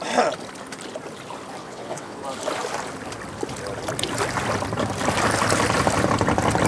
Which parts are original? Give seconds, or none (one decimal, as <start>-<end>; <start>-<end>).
0.0-1.6; 2.2-6.7